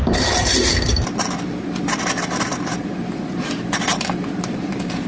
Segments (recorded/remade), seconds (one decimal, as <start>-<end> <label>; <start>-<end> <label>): 0.0-5.1 recorded